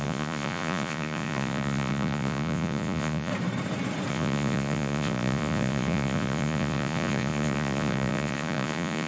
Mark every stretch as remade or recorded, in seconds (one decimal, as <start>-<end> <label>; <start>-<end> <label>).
0.0-3.3 remade; 3.3-4.1 recorded; 4.1-9.1 remade